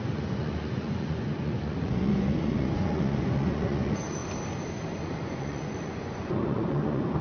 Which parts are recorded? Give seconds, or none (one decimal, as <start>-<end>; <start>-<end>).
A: 4.2-5.0